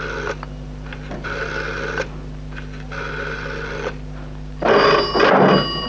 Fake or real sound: real